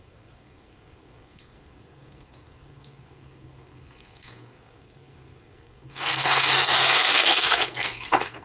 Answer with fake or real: fake